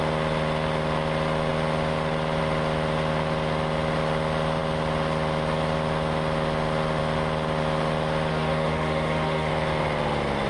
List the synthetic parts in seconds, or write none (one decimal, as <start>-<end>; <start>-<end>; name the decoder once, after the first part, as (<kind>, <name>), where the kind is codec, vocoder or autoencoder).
8.3-9.5 (autoencoder, DAC-VAE)